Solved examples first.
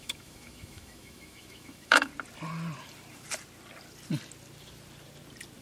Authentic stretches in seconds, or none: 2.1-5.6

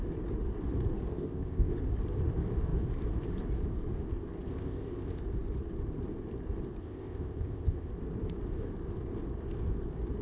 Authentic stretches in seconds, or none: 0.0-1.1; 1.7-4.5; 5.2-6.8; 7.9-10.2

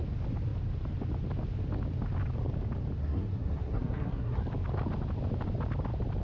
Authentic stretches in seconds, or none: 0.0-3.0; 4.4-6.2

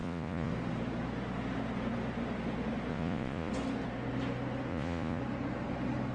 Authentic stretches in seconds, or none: 0.5-2.9; 3.5-4.7; 5.2-6.1